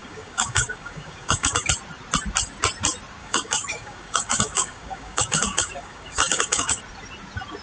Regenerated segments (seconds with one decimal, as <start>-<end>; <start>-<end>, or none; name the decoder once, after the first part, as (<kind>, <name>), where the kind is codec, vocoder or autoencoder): 0.0-1.7 (codec, DAC); 3.2-6.8